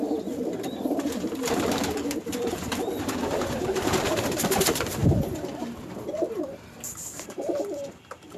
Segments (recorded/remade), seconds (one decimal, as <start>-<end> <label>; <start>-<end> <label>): 0.0-8.4 remade